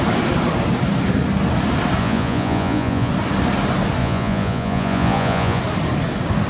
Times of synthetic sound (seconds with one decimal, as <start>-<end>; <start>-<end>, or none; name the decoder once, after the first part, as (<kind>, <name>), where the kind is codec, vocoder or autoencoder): 2.0-3.1 (vocoder, Vocos); 4.0-5.6